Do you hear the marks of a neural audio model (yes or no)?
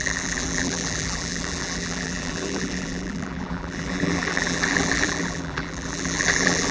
yes